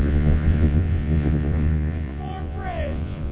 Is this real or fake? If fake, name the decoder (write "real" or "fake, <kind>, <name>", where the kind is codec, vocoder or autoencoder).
fake, vocoder, Vocos